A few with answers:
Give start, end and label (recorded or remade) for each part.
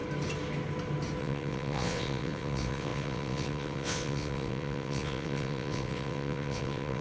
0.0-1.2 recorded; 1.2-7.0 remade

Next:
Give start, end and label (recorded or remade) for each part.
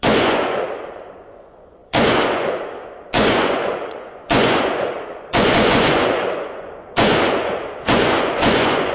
0.0-8.9 remade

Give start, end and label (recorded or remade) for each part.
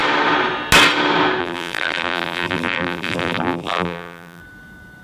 0.0-1.4 recorded; 1.4-4.4 remade; 4.4-5.0 recorded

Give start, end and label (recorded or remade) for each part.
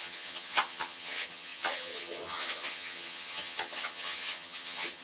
0.0-5.0 remade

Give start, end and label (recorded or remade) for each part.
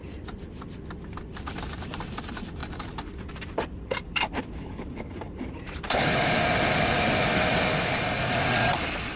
0.0-2.6 recorded; 2.6-6.2 remade; 6.2-9.2 recorded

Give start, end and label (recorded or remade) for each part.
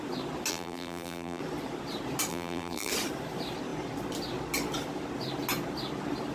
0.0-0.5 recorded; 0.5-1.4 remade; 1.4-2.3 recorded; 2.3-2.9 remade; 2.9-6.3 recorded